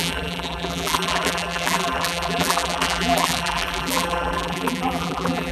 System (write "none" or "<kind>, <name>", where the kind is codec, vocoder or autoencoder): vocoder, BigVGAN v2